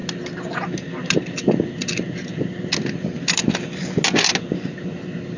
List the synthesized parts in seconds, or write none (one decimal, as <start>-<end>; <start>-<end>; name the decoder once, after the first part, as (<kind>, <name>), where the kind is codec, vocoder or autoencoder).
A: none